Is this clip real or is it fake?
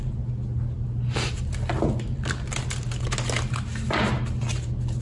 real